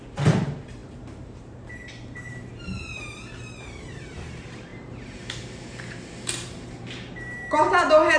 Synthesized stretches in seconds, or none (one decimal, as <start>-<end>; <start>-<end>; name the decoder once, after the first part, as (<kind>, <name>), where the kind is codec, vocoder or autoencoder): 0.0-8.2 (vocoder, BigVGAN v2)